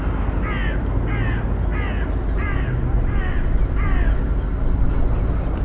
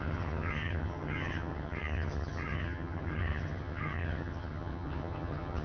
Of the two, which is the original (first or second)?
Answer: first